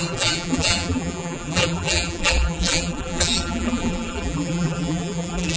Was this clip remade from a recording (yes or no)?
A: yes